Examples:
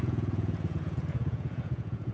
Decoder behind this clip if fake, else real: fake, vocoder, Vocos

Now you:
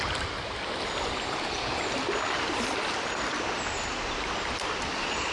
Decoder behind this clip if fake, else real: real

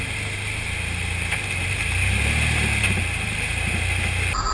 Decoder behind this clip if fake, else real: real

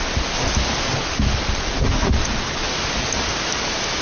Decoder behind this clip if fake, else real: real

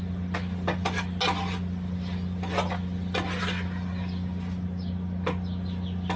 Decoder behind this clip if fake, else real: real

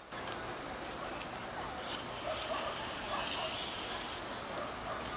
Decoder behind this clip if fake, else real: real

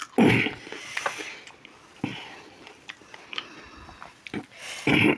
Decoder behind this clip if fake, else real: real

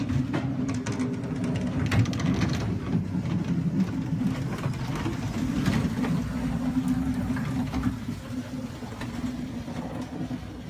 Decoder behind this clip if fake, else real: real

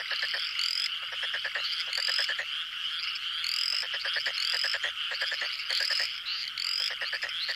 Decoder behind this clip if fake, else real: real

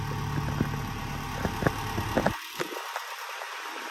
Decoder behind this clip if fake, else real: real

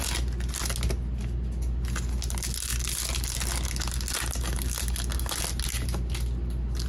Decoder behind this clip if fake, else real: real